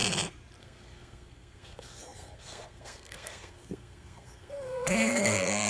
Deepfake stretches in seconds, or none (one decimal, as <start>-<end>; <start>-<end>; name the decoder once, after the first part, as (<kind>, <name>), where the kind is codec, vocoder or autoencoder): 0.6-5.7 (codec, SNAC)